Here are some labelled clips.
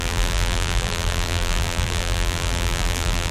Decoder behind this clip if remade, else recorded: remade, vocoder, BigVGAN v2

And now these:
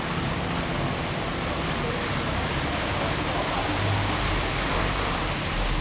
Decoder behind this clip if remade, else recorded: remade, vocoder, BigVGAN v2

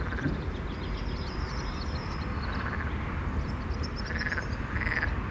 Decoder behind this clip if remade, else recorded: remade, vocoder, BigVGAN v2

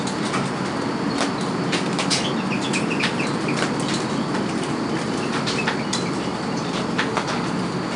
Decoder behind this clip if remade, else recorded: recorded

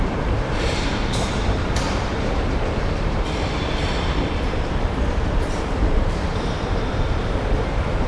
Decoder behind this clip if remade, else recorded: remade, vocoder, BigVGAN v2